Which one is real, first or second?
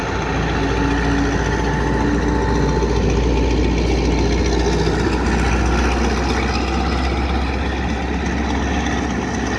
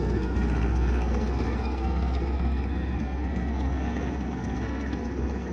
first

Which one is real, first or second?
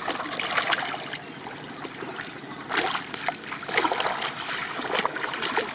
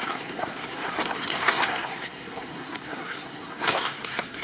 first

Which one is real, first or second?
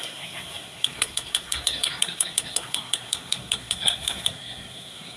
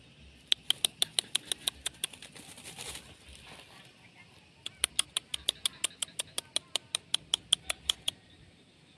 second